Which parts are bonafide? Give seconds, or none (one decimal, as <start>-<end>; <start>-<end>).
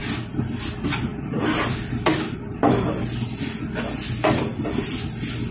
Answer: 0.0-5.5